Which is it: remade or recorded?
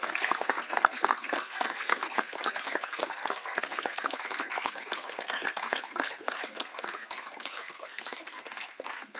remade